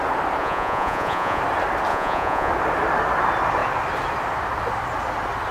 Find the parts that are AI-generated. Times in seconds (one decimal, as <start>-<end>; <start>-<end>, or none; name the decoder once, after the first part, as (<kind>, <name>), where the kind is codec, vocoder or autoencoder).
0.4-1.4 (vocoder, Vocos); 1.9-2.5